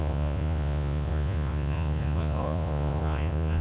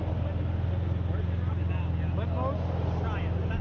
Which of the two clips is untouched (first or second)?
second